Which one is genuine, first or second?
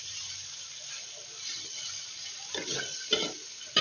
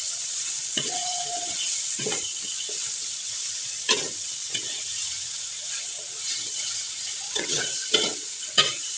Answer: first